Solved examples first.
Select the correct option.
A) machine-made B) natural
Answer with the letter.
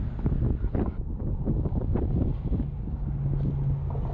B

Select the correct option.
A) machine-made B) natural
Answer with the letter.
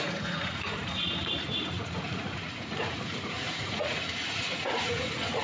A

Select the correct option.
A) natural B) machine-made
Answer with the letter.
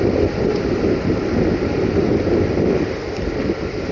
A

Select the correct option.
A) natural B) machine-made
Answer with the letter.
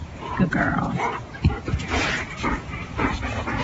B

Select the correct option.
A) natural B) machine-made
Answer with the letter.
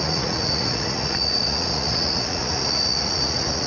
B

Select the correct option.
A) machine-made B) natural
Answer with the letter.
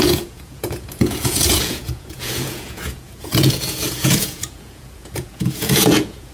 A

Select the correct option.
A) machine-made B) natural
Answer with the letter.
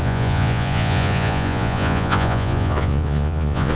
A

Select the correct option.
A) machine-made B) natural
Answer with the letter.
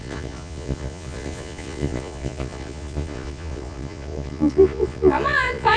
A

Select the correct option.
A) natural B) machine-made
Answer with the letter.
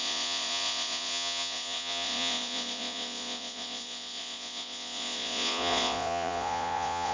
B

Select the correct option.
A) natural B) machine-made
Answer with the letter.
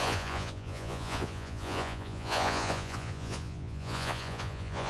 B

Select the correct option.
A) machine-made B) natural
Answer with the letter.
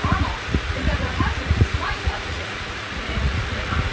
A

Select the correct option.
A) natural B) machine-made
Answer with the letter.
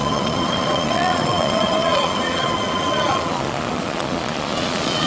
B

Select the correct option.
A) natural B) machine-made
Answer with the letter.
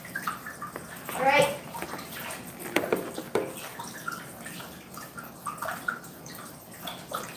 A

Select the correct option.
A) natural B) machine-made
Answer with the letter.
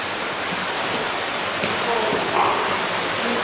A